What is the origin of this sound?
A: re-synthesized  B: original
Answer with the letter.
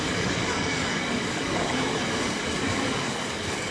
A